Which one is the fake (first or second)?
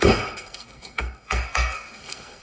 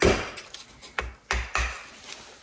first